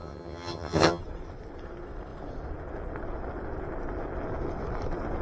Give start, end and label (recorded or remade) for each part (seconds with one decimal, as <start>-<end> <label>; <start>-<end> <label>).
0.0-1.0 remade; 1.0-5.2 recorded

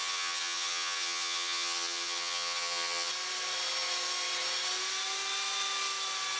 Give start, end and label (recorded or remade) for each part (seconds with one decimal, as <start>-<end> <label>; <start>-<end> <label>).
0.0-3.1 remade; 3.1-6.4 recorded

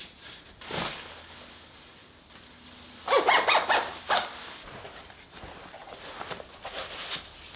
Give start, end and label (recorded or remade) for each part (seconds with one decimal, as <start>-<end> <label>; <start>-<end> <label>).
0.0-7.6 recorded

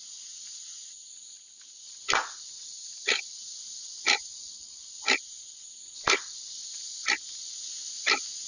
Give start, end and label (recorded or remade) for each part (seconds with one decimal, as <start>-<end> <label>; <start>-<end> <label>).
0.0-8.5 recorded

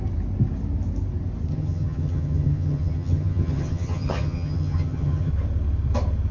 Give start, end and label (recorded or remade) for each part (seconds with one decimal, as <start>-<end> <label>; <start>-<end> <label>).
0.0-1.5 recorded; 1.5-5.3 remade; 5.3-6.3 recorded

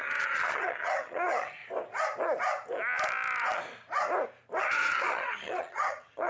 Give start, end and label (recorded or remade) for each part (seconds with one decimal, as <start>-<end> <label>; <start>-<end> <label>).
0.0-1.6 remade; 1.6-4.6 recorded; 4.6-6.3 remade